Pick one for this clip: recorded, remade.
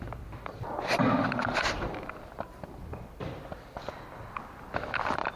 remade